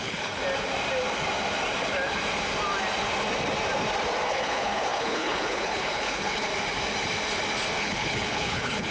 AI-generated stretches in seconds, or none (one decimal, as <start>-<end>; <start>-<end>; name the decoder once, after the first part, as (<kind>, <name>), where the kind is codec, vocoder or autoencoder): 0.0-0.4 (codec, HILCodec); 4.3-6.5; 7.8-8.9